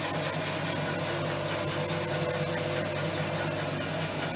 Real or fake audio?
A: real